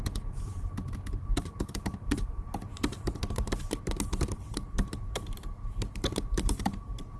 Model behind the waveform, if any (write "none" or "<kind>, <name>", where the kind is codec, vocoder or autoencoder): vocoder, BigVGAN v2